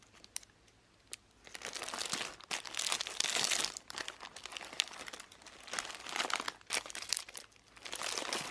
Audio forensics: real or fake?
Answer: real